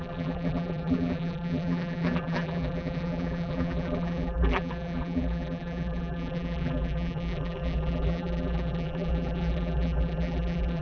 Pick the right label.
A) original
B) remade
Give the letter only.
B